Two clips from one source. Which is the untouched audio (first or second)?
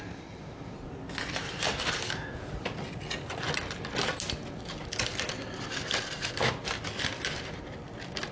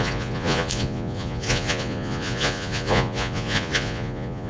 first